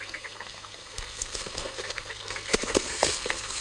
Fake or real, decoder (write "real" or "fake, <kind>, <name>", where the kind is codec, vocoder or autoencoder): fake, codec, SNAC